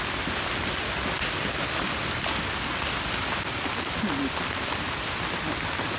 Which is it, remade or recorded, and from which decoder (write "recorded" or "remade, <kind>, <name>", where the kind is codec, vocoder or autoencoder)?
recorded